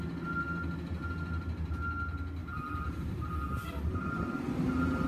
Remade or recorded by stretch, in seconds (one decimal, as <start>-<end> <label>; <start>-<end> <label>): 0.0-2.4 recorded; 2.4-3.9 remade; 3.9-5.1 recorded